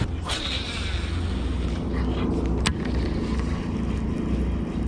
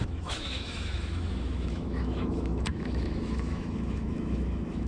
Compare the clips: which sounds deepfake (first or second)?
second